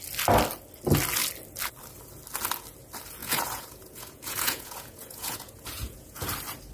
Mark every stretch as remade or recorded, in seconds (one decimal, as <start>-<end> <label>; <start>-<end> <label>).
0.0-3.2 recorded; 3.2-6.3 remade; 6.3-6.7 recorded